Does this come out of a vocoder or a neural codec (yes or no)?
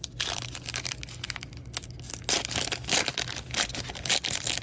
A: no